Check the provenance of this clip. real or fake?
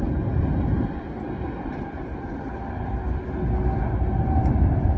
real